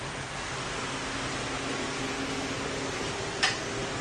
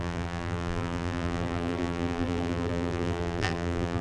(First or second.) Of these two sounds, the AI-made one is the second